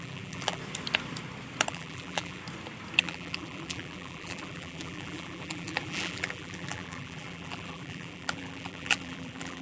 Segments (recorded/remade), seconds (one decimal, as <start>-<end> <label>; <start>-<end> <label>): 0.0-0.6 remade; 0.6-1.7 recorded; 1.7-2.4 remade; 2.4-3.0 recorded; 3.0-9.6 remade